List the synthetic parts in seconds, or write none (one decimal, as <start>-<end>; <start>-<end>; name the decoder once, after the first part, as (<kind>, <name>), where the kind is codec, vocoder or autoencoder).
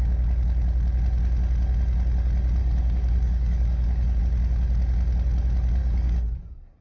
2.6-4.2 (codec, DAC); 5.8-6.8